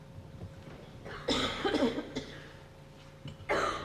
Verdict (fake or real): real